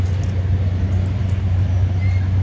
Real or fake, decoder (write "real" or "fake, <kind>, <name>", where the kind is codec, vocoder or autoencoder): real